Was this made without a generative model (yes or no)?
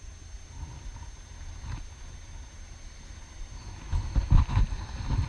yes